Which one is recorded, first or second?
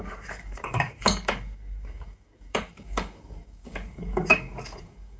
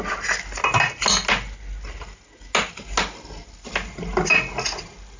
second